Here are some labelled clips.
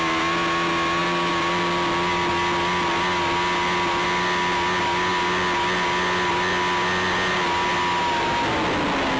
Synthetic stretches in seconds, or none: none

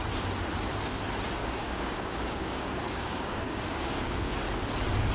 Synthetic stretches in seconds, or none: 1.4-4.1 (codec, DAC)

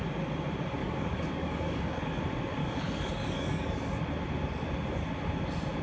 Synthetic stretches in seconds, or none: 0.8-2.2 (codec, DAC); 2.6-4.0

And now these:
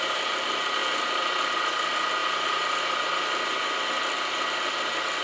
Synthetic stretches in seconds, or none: none

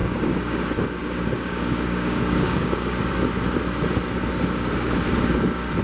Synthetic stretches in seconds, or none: 0.0-0.6 (codec, DAC); 1.0-3.0

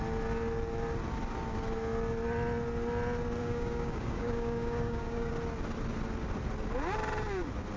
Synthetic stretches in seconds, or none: 3.4-5.3 (codec, DAC)

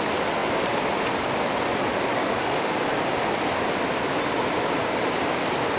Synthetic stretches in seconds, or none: 2.1-2.9 (codec, DAC)

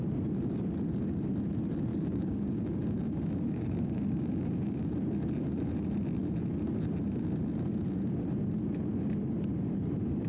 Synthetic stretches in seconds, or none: 1.9-4.9 (codec, DAC)